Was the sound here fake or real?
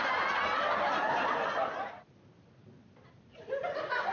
real